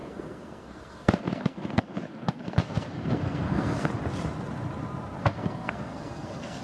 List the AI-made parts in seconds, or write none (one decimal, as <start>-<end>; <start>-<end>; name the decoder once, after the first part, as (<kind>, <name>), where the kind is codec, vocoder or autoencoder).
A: 0.0-3.9 (codec, SNAC); 5.2-6.6